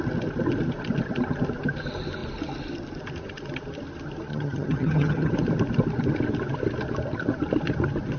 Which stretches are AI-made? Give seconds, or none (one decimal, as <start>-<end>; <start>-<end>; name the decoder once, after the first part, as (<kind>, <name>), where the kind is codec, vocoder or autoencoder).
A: 4.3-5.3 (vocoder, HiFi-GAN)